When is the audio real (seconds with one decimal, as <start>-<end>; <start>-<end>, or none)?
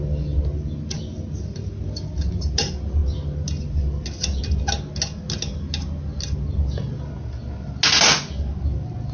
0.0-9.1